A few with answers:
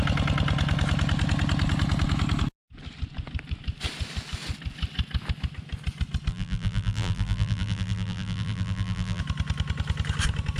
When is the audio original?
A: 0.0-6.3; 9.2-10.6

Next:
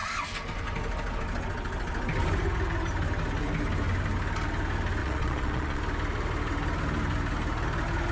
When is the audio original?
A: 0.0-5.0; 5.8-8.1